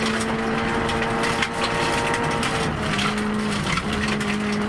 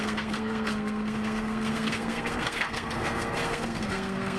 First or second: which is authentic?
first